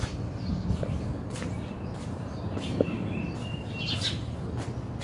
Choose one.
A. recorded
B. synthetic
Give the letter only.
A